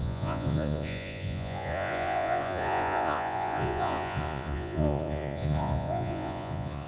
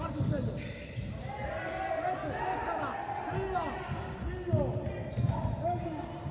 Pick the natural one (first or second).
second